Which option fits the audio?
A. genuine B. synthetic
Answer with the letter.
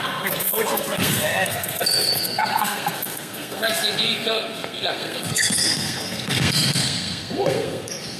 B